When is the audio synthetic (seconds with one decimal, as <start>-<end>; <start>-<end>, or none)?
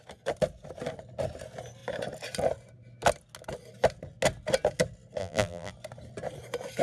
5.2-5.7